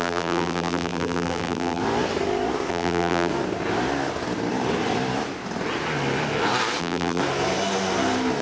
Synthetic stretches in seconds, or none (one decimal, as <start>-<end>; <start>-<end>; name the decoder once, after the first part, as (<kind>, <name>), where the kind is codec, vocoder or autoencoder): 0.0-1.8 (vocoder, BigVGAN v2); 2.7-3.3; 6.8-7.2

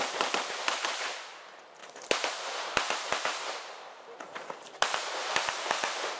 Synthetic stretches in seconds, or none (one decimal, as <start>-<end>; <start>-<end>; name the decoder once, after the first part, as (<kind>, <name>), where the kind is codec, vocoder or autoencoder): 1.8-5.5 (vocoder, BigVGAN v2)

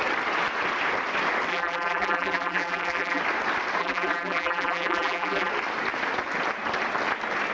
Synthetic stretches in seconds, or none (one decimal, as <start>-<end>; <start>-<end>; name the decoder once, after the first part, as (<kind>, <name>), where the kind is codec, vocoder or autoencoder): 1.5-3.2 (vocoder, BigVGAN v2); 3.8-5.5

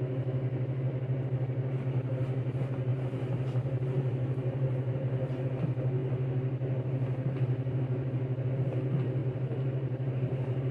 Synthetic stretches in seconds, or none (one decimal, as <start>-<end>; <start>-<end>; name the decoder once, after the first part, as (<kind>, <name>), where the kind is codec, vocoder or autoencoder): 2.9-5.5 (vocoder, BigVGAN v2); 9.2-10.7